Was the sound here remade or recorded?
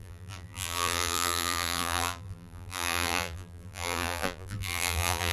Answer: remade